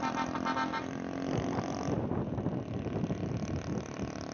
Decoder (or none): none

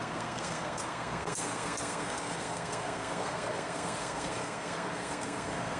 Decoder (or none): codec, SNAC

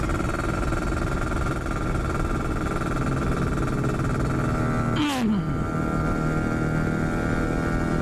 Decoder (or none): none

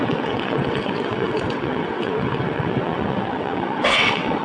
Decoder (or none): vocoder, WaveNeXt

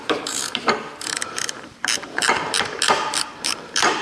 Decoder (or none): vocoder, BigVGAN v2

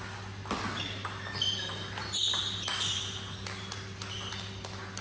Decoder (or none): none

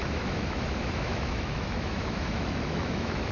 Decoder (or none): autoencoder, DAC-VAE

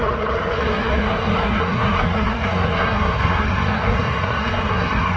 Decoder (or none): codec, SNAC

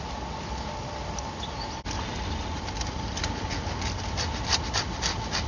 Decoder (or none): none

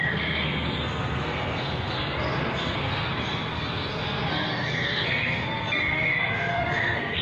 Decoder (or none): codec, SNAC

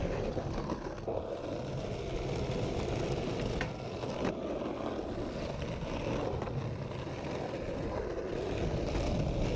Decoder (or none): none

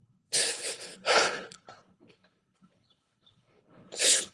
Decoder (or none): codec, HILCodec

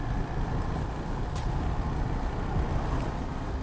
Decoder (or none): vocoder, BigVGAN v2